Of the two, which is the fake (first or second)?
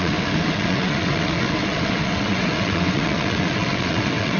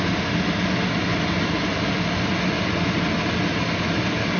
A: first